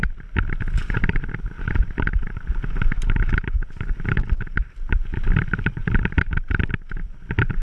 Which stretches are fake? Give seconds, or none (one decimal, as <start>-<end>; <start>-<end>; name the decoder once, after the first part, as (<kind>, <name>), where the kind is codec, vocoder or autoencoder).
none